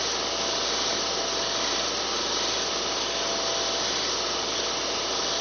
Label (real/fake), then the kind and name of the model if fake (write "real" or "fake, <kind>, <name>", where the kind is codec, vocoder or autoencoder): real